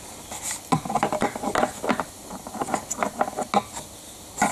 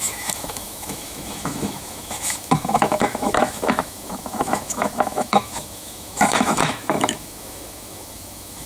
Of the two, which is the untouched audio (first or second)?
first